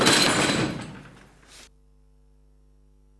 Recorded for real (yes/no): yes